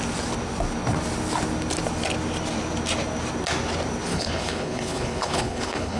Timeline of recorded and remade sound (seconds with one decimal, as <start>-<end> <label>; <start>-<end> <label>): 0.0-4.1 recorded; 4.1-6.0 remade